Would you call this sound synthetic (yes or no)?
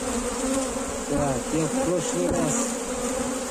no